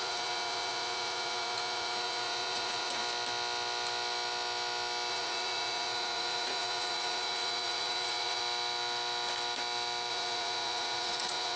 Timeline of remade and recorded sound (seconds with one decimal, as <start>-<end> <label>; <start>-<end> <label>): 0.0-3.0 remade; 3.0-5.1 recorded; 5.1-8.4 remade; 8.4-10.1 recorded; 10.1-11.6 remade